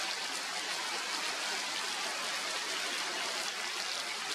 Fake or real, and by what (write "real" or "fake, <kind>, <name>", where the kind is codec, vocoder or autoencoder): real